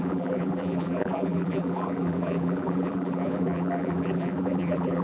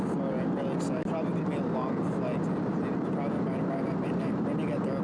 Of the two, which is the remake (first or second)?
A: first